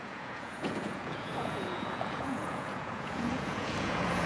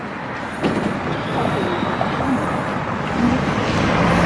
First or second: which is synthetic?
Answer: first